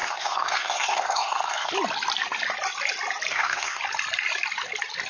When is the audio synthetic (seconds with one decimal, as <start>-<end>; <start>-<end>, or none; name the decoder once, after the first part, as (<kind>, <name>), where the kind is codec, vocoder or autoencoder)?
0.0-1.7 (codec, SNAC); 3.3-3.8